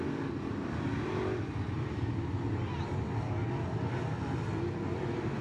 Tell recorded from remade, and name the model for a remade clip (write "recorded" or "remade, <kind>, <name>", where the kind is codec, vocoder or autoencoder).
recorded